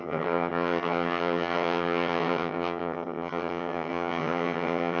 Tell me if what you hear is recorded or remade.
remade